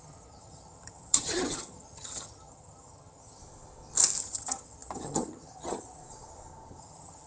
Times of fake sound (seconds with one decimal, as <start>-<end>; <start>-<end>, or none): 0.0-3.4; 4.2-6.0; 6.8-7.3